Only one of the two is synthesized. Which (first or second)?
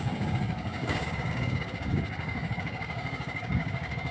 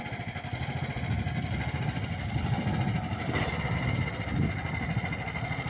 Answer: first